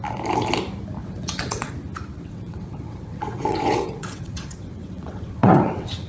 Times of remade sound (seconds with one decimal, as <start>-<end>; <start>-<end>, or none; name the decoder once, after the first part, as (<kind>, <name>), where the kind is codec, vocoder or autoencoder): 1.0-1.7 (vocoder, WaveNeXt); 2.1-6.1